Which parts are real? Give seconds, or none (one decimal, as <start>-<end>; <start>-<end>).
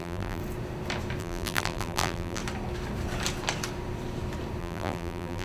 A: 0.4-1.2; 2.4-4.6